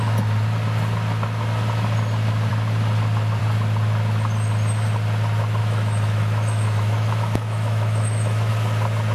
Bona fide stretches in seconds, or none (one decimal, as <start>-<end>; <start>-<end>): 0.0-5.6; 8.5-9.1